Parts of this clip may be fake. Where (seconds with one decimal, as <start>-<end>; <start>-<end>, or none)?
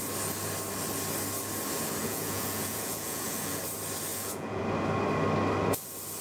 2.0-3.6; 4.1-4.6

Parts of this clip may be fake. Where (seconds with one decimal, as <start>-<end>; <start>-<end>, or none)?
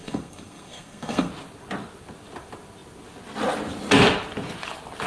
0.0-1.3